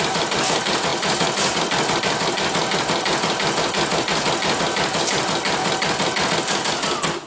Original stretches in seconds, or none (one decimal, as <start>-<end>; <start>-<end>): 0.0-0.9; 2.0-7.3

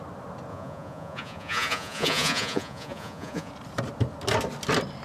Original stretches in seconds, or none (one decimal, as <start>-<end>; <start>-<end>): 0.0-0.5; 3.5-5.0

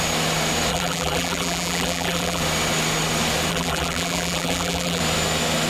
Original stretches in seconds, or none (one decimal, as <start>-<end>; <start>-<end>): 0.0-0.7; 2.4-3.5; 5.0-5.7

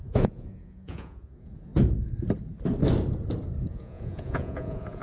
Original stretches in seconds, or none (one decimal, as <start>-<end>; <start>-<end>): 1.7-3.7

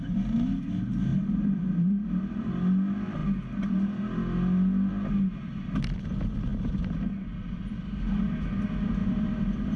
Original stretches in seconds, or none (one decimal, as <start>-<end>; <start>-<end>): 0.0-1.1; 2.5-9.0

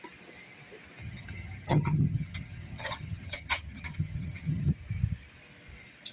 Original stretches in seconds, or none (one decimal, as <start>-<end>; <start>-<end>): 0.0-1.0; 4.7-6.1

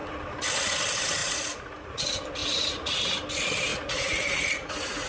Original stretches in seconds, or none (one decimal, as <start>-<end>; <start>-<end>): 0.0-1.2; 2.0-2.4; 3.0-3.7

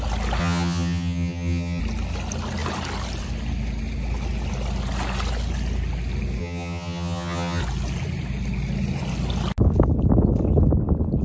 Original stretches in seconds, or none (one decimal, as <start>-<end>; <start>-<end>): 0.0-0.4; 1.8-6.4; 7.6-11.2